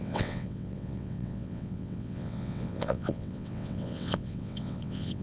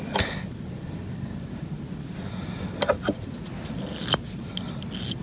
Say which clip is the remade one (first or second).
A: first